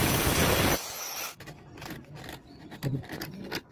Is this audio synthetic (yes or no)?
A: no